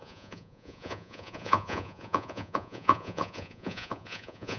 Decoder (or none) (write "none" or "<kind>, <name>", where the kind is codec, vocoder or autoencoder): vocoder, Vocos